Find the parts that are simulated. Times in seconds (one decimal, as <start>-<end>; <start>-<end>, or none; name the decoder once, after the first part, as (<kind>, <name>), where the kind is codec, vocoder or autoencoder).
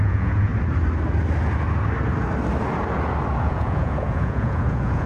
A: 0.0-0.5 (vocoder, Vocos); 3.4-5.1